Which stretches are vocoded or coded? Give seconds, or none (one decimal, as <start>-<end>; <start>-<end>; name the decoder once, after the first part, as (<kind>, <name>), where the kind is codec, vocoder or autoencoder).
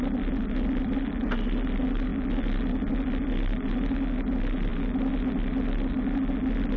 none